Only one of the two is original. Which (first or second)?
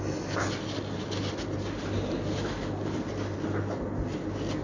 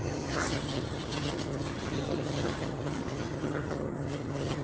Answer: first